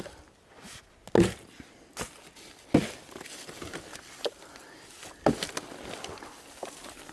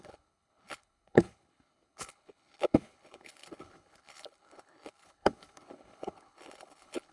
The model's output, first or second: second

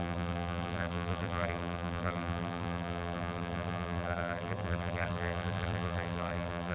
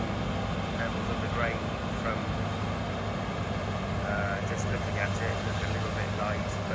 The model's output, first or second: first